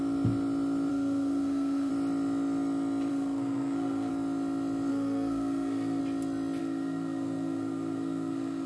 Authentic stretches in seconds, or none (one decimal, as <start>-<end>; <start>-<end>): 0.0-0.9; 1.9-3.1; 4.1-4.9; 6.0-6.6